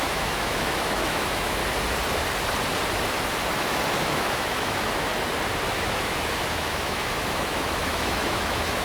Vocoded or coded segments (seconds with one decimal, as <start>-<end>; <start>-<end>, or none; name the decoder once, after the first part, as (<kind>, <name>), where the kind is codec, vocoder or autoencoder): 0.0-1.6 (autoencoder, DAC-VAE); 3.5-5.1; 5.7-8.8